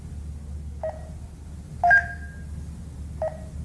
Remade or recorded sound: recorded